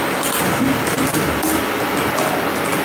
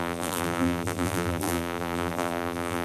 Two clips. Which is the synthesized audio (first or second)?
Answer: second